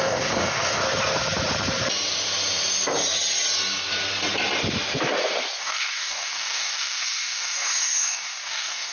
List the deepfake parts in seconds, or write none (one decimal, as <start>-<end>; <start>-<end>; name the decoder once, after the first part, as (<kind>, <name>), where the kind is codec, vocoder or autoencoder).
0.0-0.8 (codec, DAC); 5.6-8.9